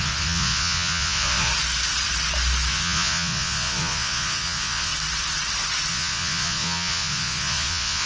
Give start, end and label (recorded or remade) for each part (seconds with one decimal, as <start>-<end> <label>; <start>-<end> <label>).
0.0-1.5 remade; 1.5-2.7 recorded; 2.7-4.9 remade; 4.9-5.9 recorded; 5.9-8.1 remade